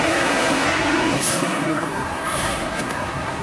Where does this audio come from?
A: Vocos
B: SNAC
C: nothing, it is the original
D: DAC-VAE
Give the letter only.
B